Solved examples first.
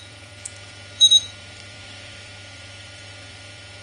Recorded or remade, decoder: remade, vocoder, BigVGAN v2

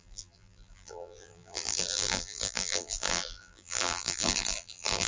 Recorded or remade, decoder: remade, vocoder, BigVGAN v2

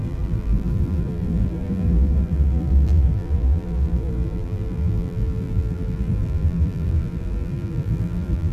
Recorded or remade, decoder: remade, vocoder, BigVGAN v2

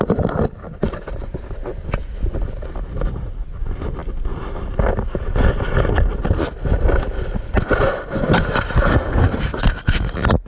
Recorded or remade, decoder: recorded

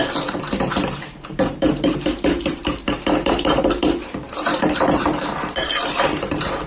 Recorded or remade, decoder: remade, vocoder, BigVGAN v2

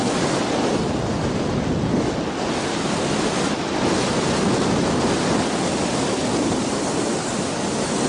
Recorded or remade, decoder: recorded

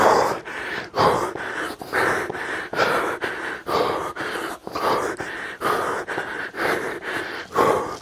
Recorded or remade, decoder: recorded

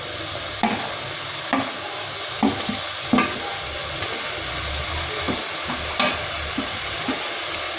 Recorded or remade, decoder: recorded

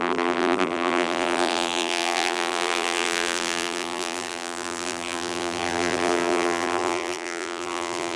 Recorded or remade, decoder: remade, vocoder, BigVGAN v2